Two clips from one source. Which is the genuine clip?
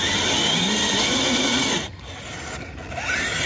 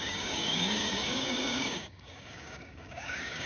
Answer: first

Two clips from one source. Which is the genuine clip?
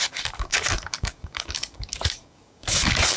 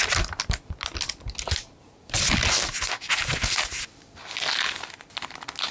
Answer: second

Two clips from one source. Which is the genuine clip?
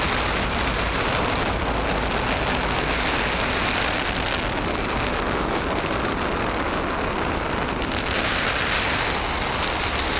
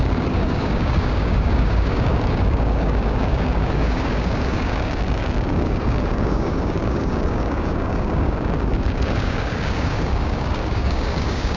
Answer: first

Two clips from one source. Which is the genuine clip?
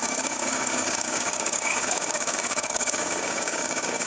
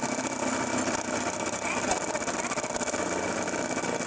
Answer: second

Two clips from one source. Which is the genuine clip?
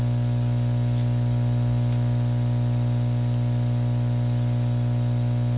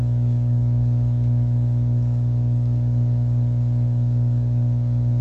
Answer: first